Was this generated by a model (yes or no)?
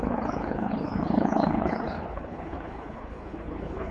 yes